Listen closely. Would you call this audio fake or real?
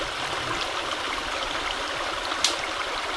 real